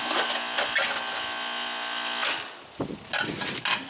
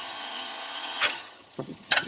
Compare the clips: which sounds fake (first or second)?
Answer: second